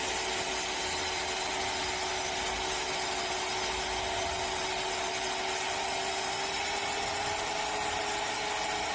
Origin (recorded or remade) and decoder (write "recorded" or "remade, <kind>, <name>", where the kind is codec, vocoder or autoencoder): recorded